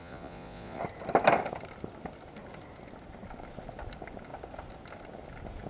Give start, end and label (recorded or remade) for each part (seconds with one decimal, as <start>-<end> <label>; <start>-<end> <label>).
0.0-0.8 remade; 0.8-5.7 recorded